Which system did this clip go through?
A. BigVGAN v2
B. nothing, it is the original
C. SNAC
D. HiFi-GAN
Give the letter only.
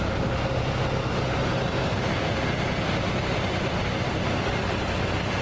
B